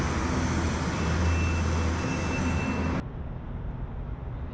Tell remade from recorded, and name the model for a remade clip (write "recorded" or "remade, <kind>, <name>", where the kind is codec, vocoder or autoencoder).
recorded